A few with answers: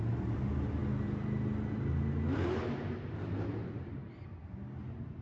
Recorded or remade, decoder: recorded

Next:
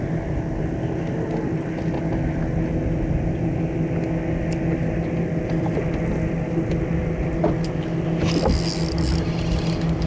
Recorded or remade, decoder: recorded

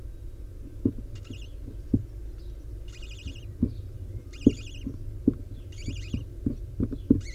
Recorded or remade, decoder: recorded